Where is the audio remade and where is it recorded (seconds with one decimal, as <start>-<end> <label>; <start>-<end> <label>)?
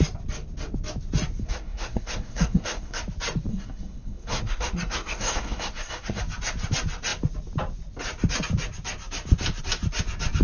0.0-1.4 recorded; 1.4-3.0 remade; 3.0-3.5 recorded; 3.5-6.2 remade; 6.2-10.4 recorded